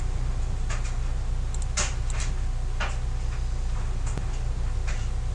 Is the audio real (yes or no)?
yes